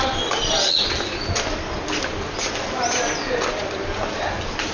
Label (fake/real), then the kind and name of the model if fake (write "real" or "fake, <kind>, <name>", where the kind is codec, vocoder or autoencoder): real